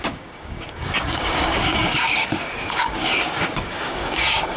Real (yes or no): no